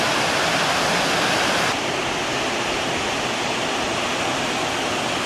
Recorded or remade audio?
recorded